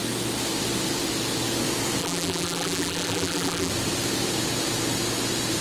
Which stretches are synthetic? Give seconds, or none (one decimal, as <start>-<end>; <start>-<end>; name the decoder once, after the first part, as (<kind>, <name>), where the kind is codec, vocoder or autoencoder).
2.0-3.7 (vocoder, BigVGAN v2)